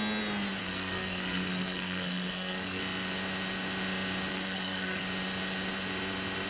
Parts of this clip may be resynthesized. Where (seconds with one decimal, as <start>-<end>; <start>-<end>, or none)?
0.6-2.8; 4.3-5.0